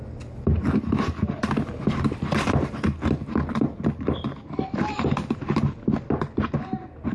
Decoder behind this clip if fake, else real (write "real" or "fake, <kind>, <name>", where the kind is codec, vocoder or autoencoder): real